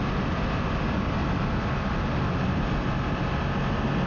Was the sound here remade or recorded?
recorded